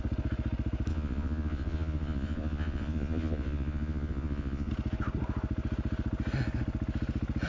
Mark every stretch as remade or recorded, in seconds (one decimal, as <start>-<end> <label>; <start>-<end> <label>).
0.0-0.9 recorded; 0.9-4.7 remade; 4.7-7.5 recorded